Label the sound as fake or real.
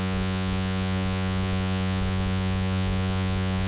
fake